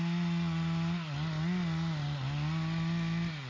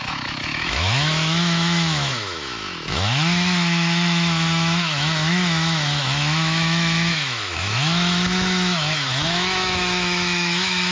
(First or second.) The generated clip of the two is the second